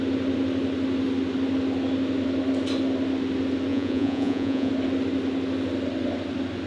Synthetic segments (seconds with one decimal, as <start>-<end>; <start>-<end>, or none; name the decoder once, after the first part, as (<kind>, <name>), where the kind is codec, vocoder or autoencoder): 3.7-4.7 (vocoder, Vocos)